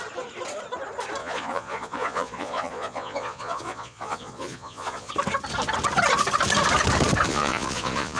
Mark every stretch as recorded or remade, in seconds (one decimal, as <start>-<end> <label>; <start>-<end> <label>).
0.0-1.2 recorded; 1.2-5.1 remade; 5.1-7.3 recorded; 7.3-8.2 remade